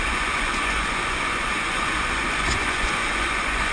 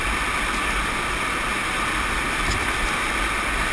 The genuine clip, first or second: second